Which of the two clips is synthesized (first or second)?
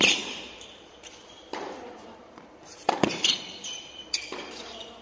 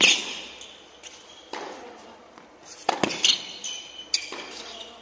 first